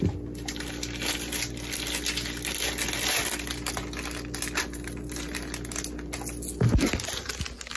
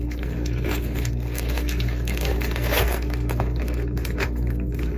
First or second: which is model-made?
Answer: second